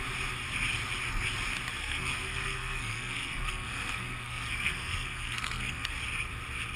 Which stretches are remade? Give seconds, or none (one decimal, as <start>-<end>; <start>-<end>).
1.8-5.9